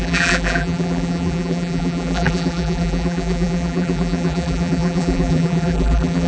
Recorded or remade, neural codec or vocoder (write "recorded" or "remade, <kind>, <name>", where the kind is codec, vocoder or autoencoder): remade, vocoder, BigVGAN v2